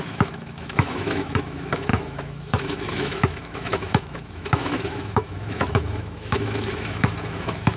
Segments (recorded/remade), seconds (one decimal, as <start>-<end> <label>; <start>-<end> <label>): 0.0-7.8 remade